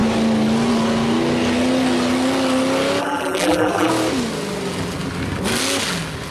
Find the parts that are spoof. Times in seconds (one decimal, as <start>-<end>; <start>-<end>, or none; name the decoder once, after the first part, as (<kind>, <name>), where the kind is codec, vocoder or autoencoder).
3.0-3.9 (vocoder, BigVGAN v2)